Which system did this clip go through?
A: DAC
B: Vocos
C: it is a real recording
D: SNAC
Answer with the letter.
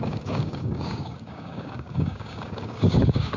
A